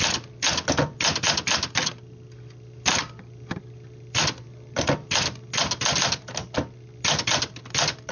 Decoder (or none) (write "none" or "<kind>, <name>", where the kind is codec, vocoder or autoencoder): none